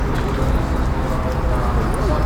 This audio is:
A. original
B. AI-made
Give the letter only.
A